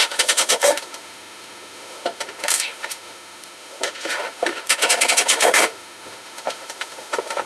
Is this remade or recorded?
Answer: remade